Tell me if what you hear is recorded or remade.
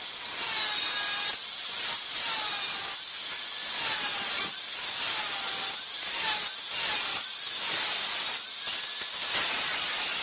recorded